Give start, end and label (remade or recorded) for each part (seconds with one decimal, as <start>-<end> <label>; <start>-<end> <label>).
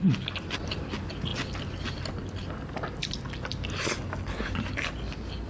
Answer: 0.0-5.5 recorded